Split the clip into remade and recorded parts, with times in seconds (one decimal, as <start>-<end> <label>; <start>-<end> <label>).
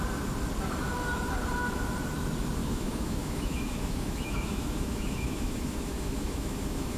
0.0-2.6 recorded; 2.6-7.0 remade